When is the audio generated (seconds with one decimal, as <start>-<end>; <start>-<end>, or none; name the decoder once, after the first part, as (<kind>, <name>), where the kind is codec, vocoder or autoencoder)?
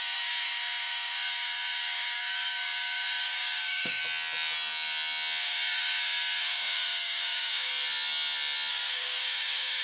0.0-4.0 (codec, DAC); 5.4-7.7; 8.7-9.8